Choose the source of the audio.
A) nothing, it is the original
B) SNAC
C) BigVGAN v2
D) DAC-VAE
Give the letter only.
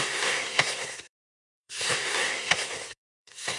B